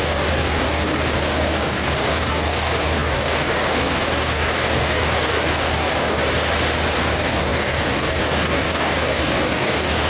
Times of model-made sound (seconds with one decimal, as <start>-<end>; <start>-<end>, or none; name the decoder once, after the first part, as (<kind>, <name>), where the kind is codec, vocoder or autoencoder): 0.0-6.2 (codec, DAC); 6.9-10.1